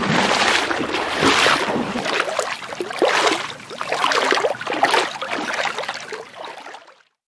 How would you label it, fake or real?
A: real